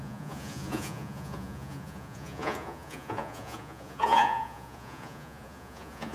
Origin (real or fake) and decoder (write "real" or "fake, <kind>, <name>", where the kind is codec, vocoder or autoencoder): fake, vocoder, Vocos